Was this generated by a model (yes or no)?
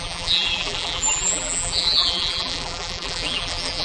yes